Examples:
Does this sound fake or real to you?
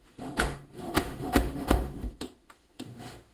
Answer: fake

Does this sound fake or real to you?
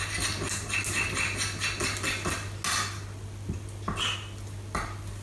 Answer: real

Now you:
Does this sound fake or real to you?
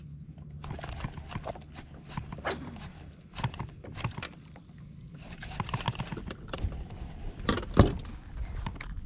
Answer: real